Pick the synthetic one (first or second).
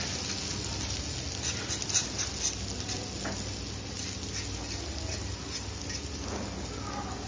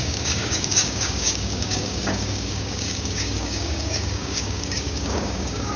second